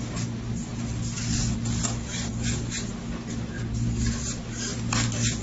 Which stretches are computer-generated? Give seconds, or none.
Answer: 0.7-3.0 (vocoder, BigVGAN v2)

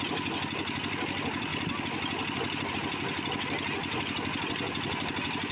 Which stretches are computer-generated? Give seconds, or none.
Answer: 0.0-5.5 (vocoder, BigVGAN v2)

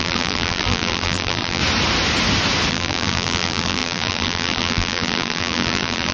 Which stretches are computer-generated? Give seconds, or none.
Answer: 0.0-1.6 (vocoder, BigVGAN v2); 2.7-6.1

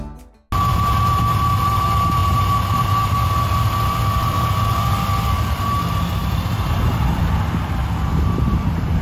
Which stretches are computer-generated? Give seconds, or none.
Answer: 2.2-3.3 (vocoder, BigVGAN v2); 4.2-5.1; 6.2-7.2; 7.8-9.0

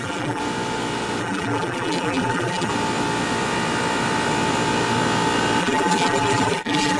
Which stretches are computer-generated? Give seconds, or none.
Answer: 0.0-0.4 (vocoder, BigVGAN v2); 1.2-2.7; 5.6-7.0